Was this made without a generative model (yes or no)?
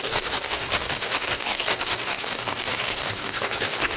no